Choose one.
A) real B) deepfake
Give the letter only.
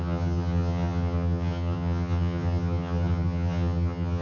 B